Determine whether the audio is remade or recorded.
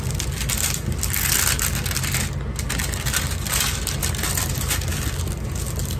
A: recorded